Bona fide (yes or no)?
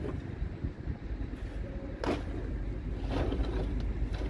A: yes